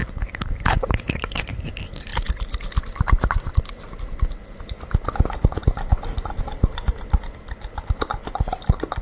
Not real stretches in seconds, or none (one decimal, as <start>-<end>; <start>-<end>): 0.0-1.7